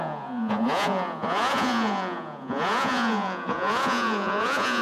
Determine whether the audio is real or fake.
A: fake